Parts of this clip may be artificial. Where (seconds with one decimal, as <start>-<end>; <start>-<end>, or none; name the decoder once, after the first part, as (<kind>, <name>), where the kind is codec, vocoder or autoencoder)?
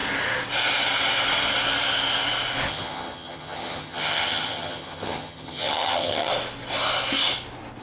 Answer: 2.7-6.3 (vocoder, HiFi-GAN)